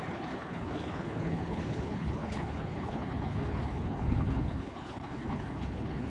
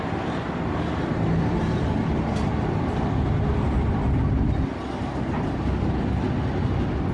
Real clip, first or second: second